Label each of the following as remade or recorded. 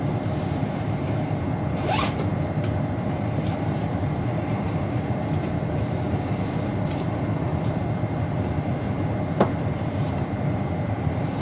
remade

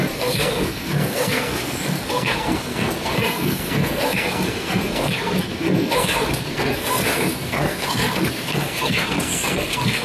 remade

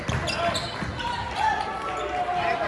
recorded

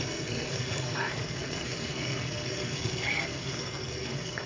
remade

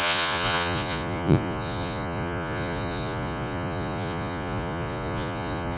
remade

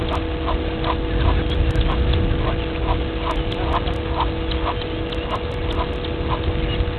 recorded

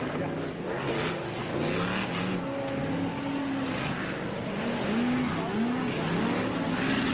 recorded